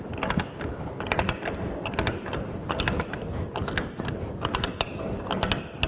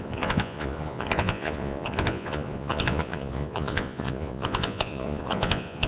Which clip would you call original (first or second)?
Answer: first